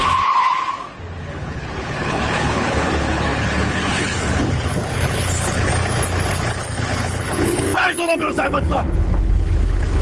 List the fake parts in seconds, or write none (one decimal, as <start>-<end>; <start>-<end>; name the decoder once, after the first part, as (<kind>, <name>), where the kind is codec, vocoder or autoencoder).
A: 0.0-0.7 (codec, HILCodec); 1.2-5.7; 6.3-10.0